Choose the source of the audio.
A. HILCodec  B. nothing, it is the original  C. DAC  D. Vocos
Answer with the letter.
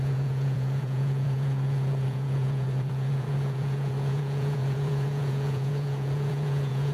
D